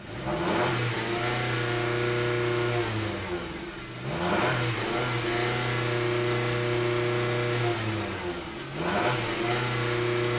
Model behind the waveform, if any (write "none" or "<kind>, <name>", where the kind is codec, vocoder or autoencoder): none